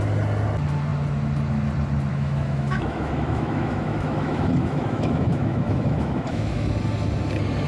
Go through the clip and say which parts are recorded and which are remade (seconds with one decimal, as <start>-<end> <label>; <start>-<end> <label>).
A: 0.0-2.1 recorded; 2.1-6.7 remade; 6.7-7.7 recorded